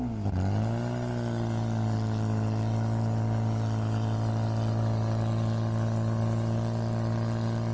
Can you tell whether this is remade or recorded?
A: recorded